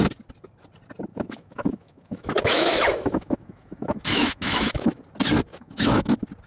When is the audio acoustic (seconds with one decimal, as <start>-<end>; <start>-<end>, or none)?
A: 0.0-1.1; 5.0-5.5; 6.1-6.5